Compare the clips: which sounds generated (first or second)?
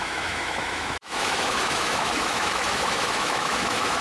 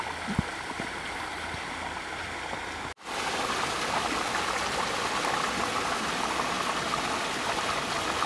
first